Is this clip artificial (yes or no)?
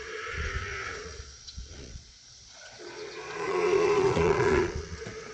yes